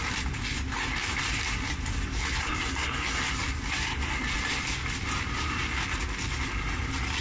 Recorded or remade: recorded